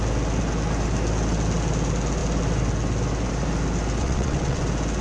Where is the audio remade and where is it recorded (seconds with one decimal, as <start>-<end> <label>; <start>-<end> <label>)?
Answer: 0.0-4.0 recorded; 4.0-4.6 remade; 4.6-5.0 recorded